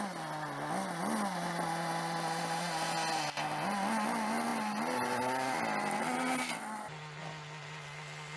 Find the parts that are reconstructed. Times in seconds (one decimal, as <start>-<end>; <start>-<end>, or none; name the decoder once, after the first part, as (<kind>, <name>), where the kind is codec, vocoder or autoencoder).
none